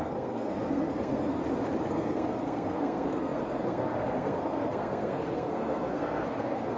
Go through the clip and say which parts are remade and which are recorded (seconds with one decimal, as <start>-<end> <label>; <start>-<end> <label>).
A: 0.0-1.4 remade; 1.4-1.9 recorded; 1.9-6.8 remade